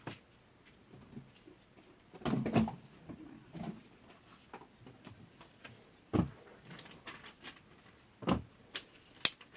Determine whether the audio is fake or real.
real